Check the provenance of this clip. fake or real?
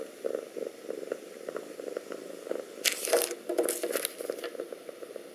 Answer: real